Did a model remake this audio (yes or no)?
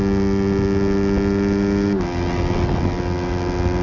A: no